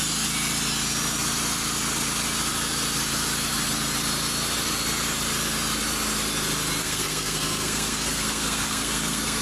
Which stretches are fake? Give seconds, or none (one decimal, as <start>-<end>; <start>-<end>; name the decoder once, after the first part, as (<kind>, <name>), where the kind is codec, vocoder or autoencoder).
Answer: 6.8-9.4 (codec, SNAC)